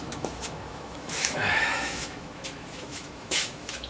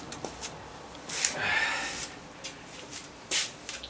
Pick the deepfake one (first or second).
first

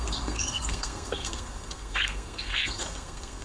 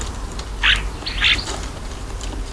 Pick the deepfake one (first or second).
first